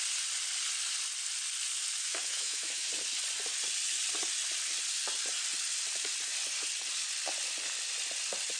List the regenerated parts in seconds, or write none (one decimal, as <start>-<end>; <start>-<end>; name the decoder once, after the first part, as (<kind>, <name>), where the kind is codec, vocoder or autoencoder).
2.0-2.9 (autoencoder, DAC-VAE)